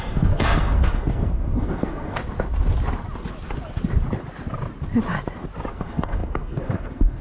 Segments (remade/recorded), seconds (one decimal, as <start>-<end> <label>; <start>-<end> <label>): 0.0-2.2 remade; 2.2-5.7 recorded; 5.7-7.2 remade